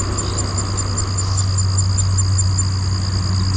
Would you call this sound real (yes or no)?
yes